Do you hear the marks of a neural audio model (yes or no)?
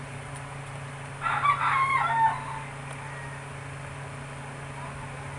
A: no